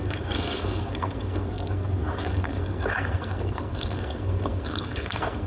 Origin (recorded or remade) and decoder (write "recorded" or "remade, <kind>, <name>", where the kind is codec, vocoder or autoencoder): remade, codec, SNAC